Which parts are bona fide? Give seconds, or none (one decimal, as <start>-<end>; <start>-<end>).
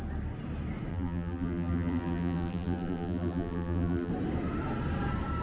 0.0-0.9; 4.1-5.4